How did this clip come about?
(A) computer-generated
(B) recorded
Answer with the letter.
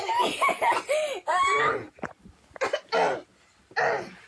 B